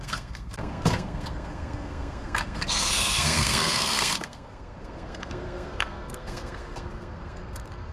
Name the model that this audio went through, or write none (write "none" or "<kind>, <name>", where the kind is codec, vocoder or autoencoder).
codec, SNAC